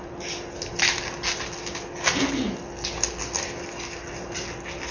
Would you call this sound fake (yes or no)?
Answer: no